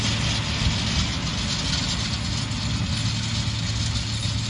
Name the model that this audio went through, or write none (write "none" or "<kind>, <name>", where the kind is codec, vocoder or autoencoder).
none